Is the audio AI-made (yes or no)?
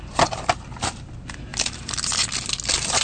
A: no